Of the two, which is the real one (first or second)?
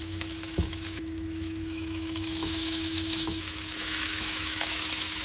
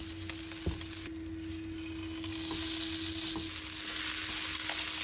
second